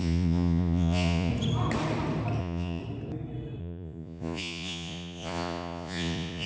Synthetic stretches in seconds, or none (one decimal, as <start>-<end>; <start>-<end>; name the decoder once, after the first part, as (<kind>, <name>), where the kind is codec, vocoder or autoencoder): 0.0-1.3 (vocoder, Vocos); 2.4-2.8; 3.6-6.5